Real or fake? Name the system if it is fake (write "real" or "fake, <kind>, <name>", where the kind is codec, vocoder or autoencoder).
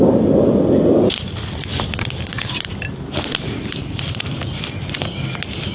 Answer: fake, vocoder, BigVGAN v2